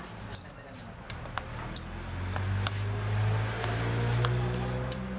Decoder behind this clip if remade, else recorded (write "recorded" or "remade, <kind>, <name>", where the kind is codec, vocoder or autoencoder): recorded